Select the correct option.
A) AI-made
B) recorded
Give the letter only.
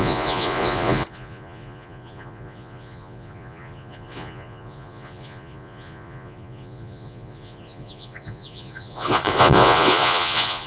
A